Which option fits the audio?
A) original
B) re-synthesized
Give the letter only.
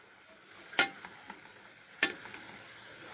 A